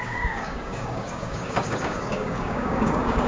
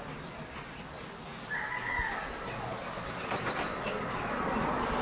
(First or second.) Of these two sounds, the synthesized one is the first